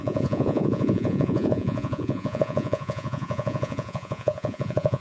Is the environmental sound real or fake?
fake